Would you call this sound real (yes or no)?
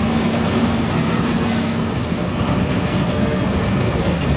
no